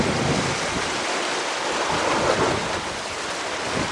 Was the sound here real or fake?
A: fake